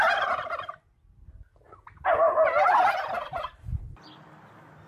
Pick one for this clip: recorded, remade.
recorded